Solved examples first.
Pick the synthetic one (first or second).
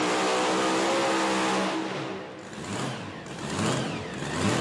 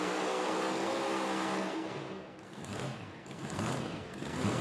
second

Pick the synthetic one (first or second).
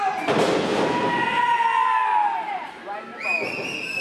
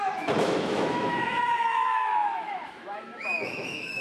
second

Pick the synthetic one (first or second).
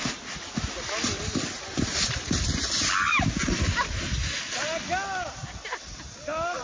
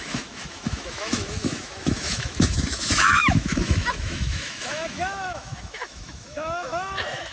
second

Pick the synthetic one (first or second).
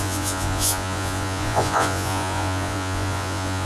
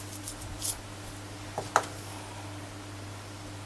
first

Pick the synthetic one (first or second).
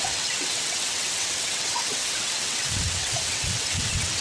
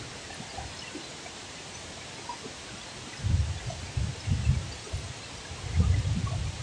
first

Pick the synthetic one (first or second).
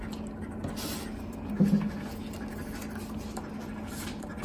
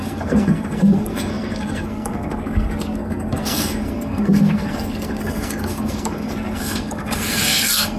second